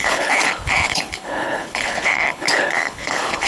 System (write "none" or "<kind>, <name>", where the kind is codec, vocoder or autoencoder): codec, HILCodec